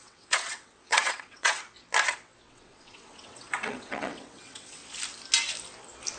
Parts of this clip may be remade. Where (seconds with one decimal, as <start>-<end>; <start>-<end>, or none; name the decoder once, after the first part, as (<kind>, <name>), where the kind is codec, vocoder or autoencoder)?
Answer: 0.0-1.6 (vocoder, WaveNeXt); 2.5-4.8